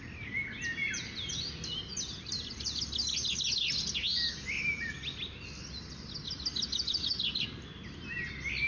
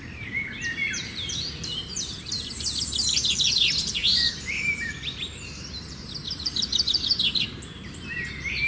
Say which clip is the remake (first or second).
second